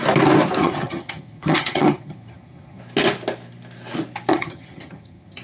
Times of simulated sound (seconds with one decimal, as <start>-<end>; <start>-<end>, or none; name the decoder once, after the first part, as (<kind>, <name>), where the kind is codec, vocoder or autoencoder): 0.6-2.8 (vocoder, HiFi-GAN); 4.3-5.4